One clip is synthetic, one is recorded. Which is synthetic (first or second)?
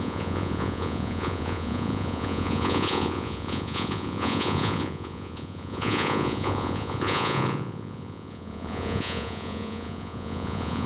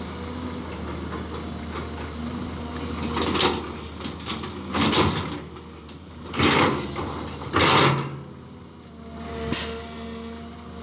first